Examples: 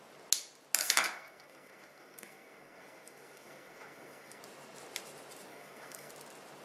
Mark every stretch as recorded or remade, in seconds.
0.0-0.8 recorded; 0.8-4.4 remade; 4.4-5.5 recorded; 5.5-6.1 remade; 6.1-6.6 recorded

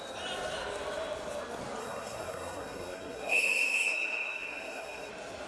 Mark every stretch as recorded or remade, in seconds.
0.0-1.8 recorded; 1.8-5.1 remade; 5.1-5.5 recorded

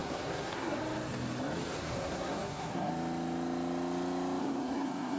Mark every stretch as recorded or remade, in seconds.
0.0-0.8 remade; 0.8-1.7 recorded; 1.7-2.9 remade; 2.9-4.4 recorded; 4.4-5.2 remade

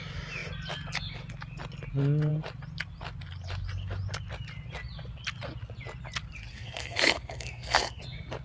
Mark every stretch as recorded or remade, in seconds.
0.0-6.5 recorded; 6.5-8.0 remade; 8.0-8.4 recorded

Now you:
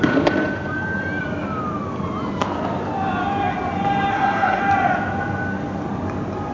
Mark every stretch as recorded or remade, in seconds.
0.0-4.1 recorded; 4.1-4.6 remade; 4.6-6.5 recorded

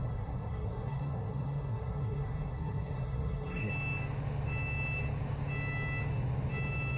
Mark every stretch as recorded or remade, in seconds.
0.0-3.7 remade; 3.7-7.0 recorded

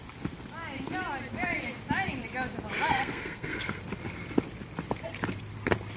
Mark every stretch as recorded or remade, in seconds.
0.0-2.9 recorded; 2.9-3.8 remade; 3.8-6.0 recorded

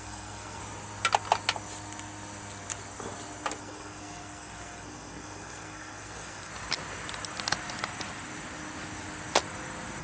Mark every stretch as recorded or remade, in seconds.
0.0-0.6 remade; 0.6-3.6 recorded; 3.6-6.5 remade; 6.5-10.0 recorded